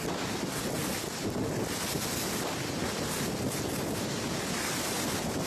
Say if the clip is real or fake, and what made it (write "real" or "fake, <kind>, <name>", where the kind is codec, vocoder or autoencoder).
real